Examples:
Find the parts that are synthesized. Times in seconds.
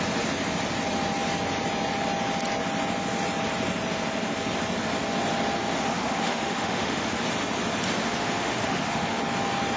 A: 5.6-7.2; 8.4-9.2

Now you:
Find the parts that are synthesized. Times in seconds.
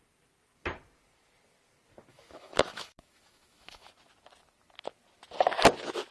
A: 2.1-3.9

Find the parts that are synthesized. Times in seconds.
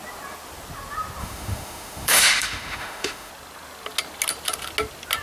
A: 1.2-3.3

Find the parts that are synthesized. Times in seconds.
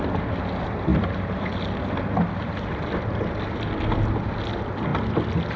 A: none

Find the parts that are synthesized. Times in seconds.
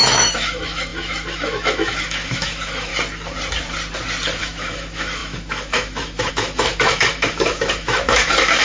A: 0.0-2.9; 4.4-8.6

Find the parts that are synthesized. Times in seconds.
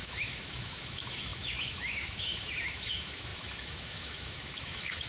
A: 0.0-5.1